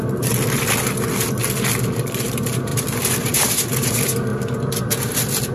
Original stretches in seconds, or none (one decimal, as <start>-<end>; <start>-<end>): 0.0-2.7; 3.9-5.5